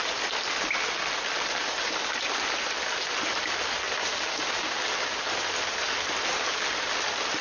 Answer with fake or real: real